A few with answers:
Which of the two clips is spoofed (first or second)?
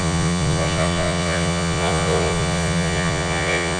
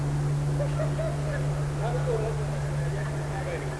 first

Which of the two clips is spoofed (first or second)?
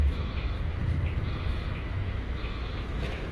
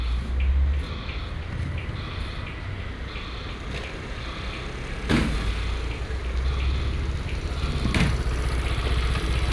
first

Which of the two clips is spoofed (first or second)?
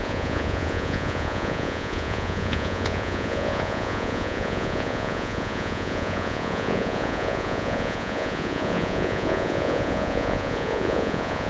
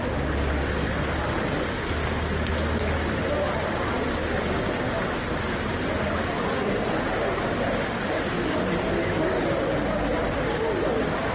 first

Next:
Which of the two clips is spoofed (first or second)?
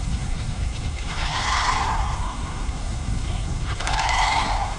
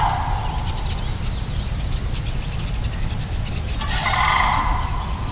first